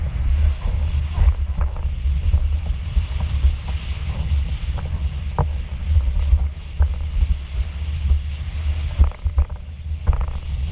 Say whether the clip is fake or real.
real